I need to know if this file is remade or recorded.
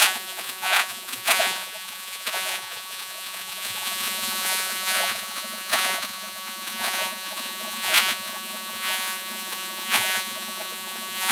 remade